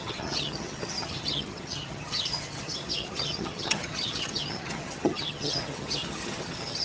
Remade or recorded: remade